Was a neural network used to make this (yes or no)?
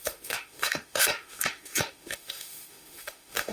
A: yes